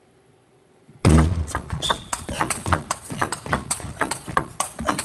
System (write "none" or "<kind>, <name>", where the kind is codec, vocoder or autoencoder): vocoder, Vocos